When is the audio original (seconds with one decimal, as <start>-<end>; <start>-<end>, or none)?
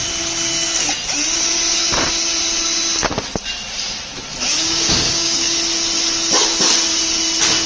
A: 0.0-4.6; 5.6-7.7